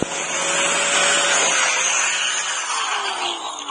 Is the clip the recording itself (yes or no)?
yes